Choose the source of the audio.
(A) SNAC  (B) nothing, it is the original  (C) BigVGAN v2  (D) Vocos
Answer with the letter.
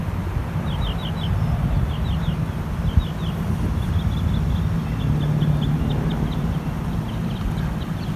B